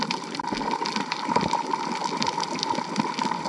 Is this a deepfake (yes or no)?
no